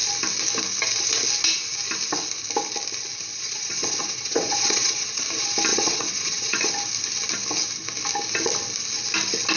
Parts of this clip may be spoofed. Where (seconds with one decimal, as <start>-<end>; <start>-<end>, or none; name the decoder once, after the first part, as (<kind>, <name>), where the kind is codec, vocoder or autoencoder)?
3.3-5.2 (vocoder, Vocos); 5.7-6.7